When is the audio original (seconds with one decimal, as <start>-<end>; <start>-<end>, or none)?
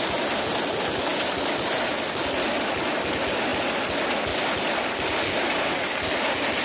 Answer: 0.0-6.6